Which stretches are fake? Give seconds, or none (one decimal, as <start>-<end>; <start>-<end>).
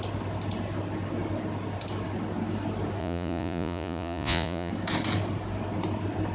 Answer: 3.0-4.7